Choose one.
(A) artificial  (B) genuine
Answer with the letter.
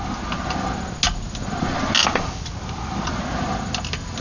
B